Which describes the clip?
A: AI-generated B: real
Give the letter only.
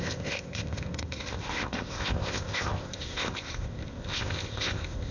A